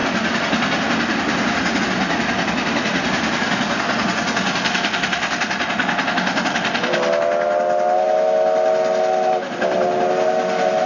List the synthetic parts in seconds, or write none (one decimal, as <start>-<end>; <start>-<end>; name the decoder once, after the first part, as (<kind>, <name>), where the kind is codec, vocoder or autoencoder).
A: none